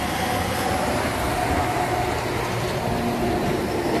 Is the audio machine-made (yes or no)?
no